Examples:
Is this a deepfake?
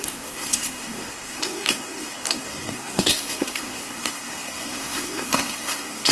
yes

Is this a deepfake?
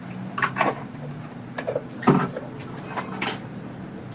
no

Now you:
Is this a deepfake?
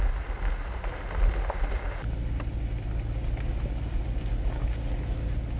no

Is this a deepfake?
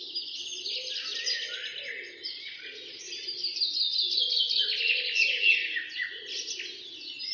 no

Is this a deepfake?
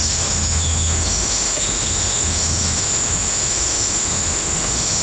yes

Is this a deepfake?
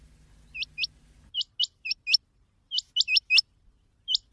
no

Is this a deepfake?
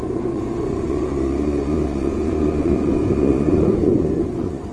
yes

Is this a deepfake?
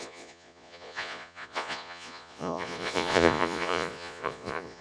yes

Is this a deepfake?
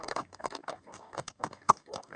yes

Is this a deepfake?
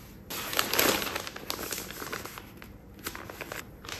no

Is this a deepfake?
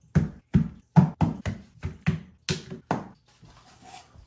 no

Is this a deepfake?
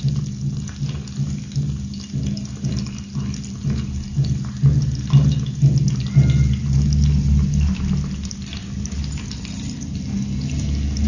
no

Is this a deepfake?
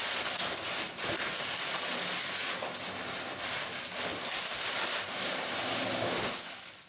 no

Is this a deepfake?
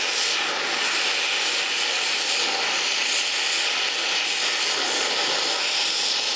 no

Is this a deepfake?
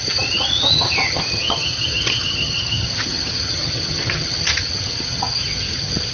yes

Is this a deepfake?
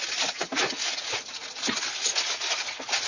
no